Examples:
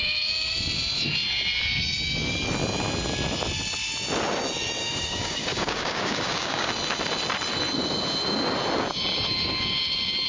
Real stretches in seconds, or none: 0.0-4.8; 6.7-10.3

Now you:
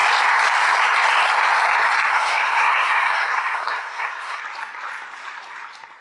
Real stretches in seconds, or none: 0.0-2.1; 4.4-6.0